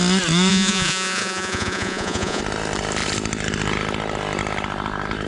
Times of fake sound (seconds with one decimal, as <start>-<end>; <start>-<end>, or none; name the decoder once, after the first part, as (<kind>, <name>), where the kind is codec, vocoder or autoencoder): 0.5-2.4 (vocoder, Vocos)